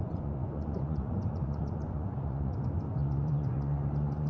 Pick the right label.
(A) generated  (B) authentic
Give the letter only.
A